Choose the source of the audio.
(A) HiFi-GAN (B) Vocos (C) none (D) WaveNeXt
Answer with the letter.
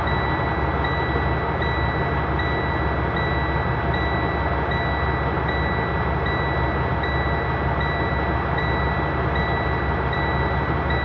C